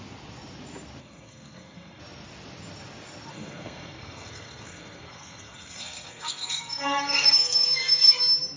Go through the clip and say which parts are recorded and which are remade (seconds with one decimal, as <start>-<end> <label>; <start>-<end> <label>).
0.0-1.0 recorded; 1.0-2.0 remade; 2.0-3.3 recorded; 3.3-8.2 remade; 8.2-8.6 recorded